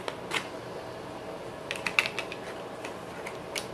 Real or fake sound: real